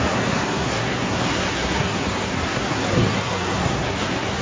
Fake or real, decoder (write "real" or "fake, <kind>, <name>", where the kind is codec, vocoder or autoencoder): fake, codec, SNAC